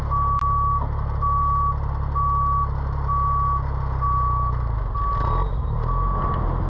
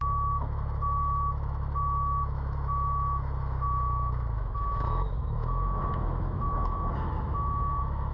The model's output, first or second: second